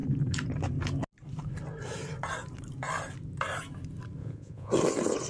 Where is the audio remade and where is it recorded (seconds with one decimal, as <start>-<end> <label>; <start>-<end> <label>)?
0.0-4.2 recorded; 4.2-4.7 remade; 4.7-5.3 recorded